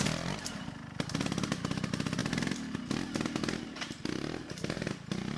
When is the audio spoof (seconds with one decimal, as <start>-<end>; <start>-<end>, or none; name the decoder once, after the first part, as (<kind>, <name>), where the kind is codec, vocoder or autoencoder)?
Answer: none